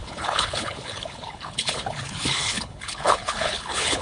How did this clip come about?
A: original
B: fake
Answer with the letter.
B